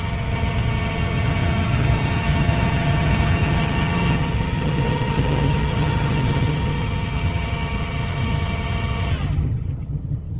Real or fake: fake